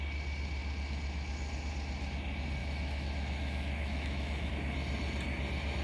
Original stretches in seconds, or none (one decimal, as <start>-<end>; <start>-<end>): 0.0-2.6; 4.5-5.8